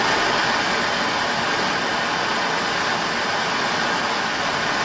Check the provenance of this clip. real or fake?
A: real